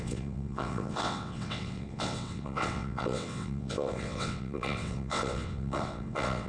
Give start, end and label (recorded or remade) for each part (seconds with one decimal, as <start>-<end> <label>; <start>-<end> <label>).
0.0-6.5 remade